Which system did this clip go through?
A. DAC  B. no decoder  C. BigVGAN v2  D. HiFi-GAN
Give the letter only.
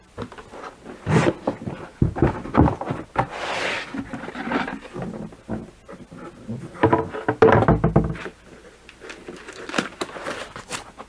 B